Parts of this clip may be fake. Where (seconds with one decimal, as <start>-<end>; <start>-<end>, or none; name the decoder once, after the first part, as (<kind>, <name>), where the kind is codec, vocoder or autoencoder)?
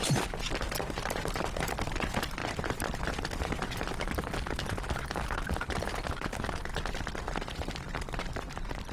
none